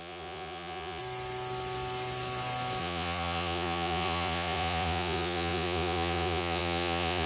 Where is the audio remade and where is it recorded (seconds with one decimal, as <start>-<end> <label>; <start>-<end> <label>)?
0.0-1.0 remade; 1.0-2.8 recorded; 2.8-7.3 remade